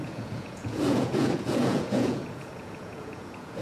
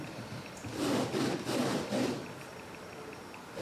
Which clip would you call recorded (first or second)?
second